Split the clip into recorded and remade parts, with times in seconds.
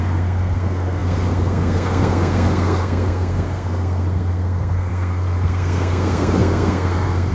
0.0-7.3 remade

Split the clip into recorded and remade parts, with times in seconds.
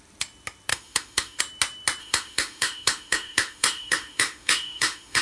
0.0-0.7 recorded; 0.7-1.4 remade; 1.4-2.0 recorded; 2.0-5.2 remade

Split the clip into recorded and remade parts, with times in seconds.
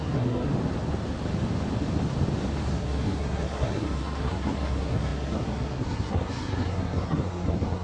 0.0-0.5 remade; 0.5-2.7 recorded; 2.7-7.8 remade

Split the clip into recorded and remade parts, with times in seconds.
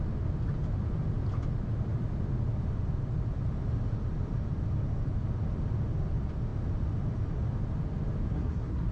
0.0-8.3 recorded; 8.3-8.9 remade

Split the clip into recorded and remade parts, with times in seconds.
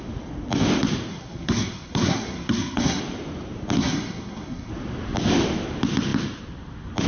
0.0-1.1 recorded; 1.1-3.0 remade; 3.0-3.8 recorded; 3.8-4.7 remade; 4.7-7.1 recorded